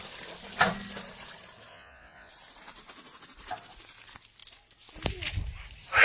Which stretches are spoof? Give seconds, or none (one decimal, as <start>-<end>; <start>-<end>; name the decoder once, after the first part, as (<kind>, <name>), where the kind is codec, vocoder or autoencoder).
1.7-2.3 (vocoder, Vocos)